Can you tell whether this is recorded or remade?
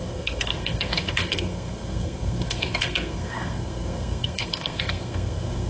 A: remade